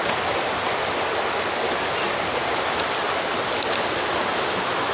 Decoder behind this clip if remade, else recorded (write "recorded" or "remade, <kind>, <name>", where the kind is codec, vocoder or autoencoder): recorded